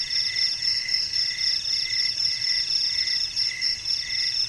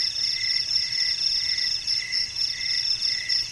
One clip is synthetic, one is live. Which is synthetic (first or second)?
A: second